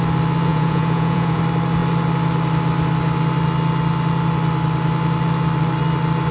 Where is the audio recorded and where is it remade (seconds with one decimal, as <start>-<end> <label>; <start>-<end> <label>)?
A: 0.0-0.5 recorded; 0.5-1.4 remade; 1.4-6.3 recorded